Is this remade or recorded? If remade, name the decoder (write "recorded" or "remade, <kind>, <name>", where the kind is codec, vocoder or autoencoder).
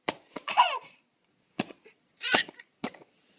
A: remade, vocoder, Vocos